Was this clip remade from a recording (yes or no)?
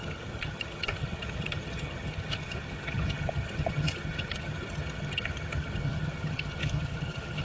yes